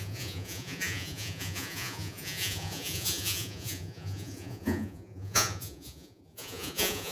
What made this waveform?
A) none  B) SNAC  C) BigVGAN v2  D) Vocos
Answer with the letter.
D